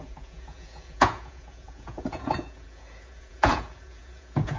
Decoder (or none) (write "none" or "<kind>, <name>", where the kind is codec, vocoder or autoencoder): vocoder, Vocos